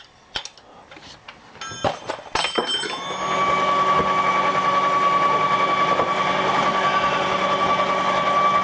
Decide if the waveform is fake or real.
real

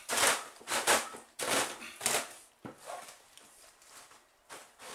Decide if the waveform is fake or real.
real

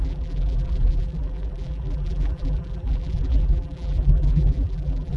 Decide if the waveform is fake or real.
fake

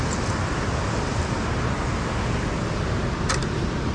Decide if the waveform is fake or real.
real